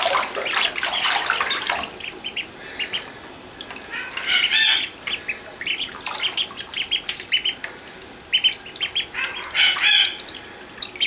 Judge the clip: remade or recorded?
recorded